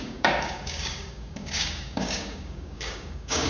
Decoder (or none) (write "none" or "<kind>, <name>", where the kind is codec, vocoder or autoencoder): codec, DAC